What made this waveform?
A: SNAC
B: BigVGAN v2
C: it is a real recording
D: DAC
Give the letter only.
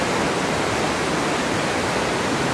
C